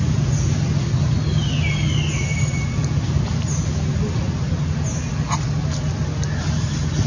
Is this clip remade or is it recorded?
recorded